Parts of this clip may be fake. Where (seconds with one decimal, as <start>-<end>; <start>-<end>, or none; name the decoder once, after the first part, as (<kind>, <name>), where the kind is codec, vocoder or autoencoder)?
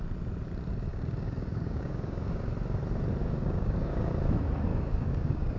0.9-2.4 (codec, DAC); 3.2-4.1; 4.7-5.6